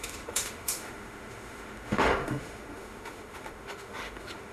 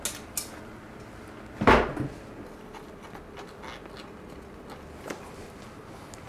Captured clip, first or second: second